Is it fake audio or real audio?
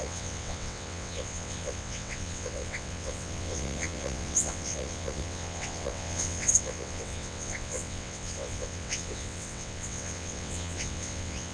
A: fake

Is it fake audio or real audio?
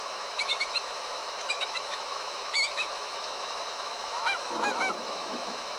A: fake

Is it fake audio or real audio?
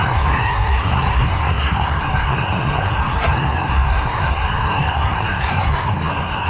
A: fake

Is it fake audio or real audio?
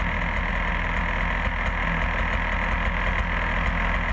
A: real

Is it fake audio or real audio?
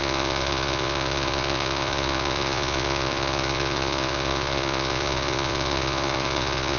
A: fake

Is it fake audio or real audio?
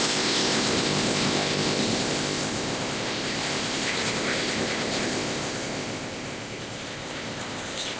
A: fake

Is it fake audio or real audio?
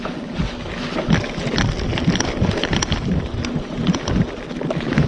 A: real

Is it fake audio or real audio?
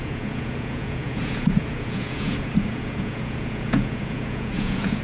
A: fake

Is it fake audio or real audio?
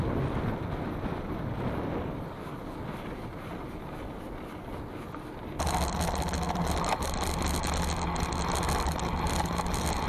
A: real